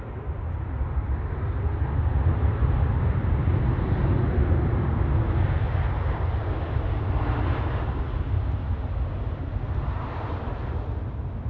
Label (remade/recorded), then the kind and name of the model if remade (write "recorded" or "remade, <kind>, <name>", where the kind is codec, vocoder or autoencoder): recorded